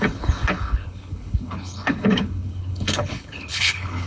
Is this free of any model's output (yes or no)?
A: no